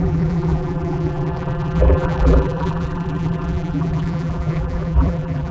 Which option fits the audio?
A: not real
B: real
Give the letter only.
A